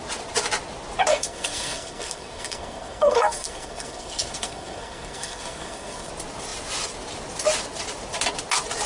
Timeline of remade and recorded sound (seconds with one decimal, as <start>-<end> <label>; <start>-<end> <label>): 0.0-1.1 recorded; 1.1-6.1 remade; 6.1-8.9 recorded